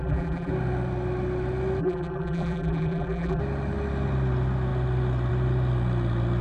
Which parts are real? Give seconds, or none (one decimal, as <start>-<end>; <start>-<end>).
0.5-1.8; 3.4-6.4